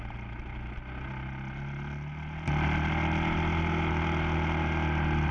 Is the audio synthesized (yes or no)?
no